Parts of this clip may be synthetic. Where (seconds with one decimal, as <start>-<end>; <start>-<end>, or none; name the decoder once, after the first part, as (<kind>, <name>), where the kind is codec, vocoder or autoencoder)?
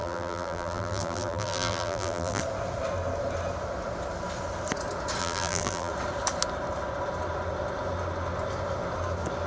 0.0-2.4 (vocoder, BigVGAN v2); 5.2-5.9